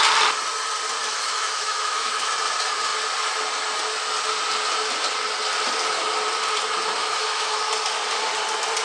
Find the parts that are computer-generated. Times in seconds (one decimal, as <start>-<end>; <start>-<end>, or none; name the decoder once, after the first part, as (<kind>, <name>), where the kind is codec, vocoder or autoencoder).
1.0-2.3 (autoencoder, DAC-VAE); 7.0-7.6